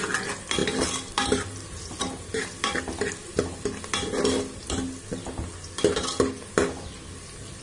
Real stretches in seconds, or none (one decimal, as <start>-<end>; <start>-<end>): 0.0-7.6